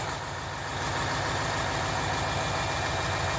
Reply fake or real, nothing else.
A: real